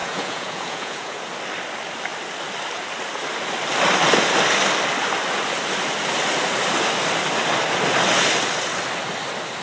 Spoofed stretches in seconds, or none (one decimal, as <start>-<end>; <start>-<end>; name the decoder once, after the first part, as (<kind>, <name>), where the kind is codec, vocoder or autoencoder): 0.0-1.3 (vocoder, Vocos)